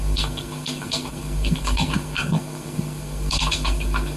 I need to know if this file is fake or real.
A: fake